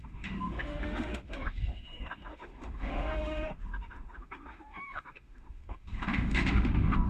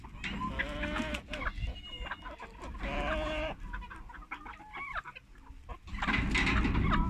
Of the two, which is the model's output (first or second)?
first